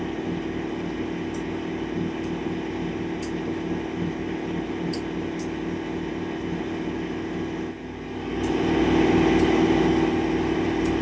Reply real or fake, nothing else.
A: real